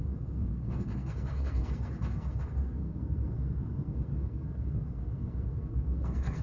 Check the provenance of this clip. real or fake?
fake